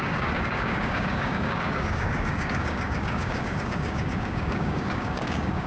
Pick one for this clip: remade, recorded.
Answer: remade